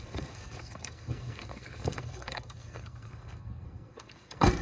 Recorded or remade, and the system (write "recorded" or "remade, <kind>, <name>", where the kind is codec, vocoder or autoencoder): remade, codec, SNAC